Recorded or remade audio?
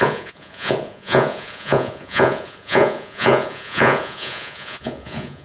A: remade